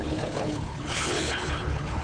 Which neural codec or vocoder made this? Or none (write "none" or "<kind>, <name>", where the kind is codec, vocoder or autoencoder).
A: codec, HILCodec